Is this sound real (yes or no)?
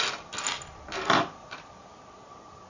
yes